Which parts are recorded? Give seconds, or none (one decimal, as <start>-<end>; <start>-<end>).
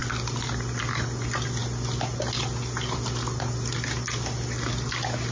0.0-5.3